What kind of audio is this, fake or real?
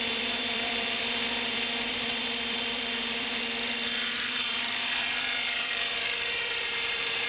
fake